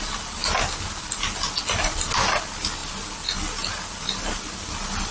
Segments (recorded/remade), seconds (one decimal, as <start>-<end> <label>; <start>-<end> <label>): 0.0-5.1 recorded